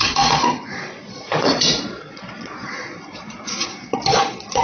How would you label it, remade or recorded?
remade